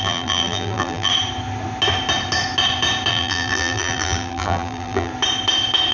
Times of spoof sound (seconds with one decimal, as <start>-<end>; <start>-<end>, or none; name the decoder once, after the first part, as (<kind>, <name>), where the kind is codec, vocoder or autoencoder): 0.0-1.1 (vocoder, BigVGAN v2); 3.1-5.1